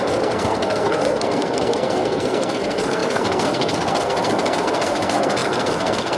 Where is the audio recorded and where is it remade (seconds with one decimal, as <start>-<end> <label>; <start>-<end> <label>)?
0.0-6.2 remade

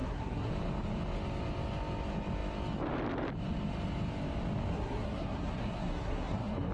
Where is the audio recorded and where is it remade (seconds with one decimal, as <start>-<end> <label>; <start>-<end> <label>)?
0.0-0.5 remade; 0.5-4.7 recorded; 4.7-6.7 remade

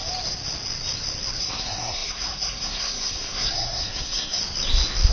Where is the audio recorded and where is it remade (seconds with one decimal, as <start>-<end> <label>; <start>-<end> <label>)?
0.0-1.4 recorded; 1.4-4.4 remade; 4.4-5.1 recorded

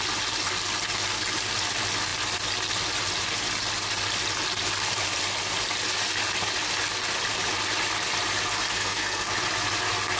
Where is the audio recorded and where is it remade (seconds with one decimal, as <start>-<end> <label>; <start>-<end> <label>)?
0.0-8.7 recorded; 8.7-9.3 remade; 9.3-10.2 recorded

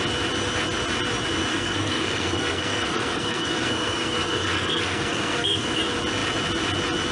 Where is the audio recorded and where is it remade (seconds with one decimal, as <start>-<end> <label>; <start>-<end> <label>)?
0.0-1.5 recorded; 1.5-5.8 remade; 5.8-7.1 recorded

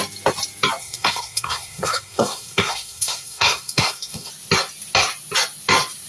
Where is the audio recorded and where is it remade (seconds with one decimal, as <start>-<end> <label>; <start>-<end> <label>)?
0.0-0.8 recorded; 0.8-4.3 remade; 4.3-6.1 recorded

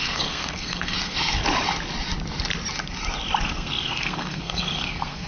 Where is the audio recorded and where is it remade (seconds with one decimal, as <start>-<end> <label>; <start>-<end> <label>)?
0.0-1.4 remade; 1.4-3.4 recorded; 3.4-5.3 remade

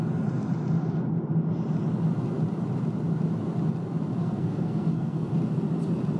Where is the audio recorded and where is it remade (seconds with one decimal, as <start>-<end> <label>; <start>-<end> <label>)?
0.0-4.2 recorded; 4.2-5.3 remade; 5.3-6.2 recorded